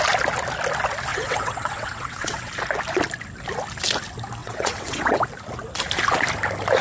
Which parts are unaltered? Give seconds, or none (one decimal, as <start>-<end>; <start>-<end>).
0.0-1.1; 2.5-4.4; 5.2-6.8